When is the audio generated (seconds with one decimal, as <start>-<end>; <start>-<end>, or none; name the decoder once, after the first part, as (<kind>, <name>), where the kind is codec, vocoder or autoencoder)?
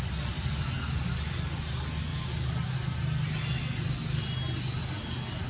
none